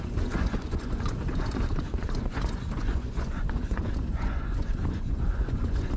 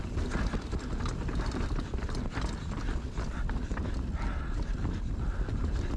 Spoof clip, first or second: first